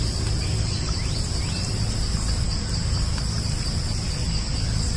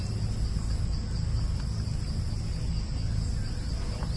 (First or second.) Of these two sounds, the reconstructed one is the first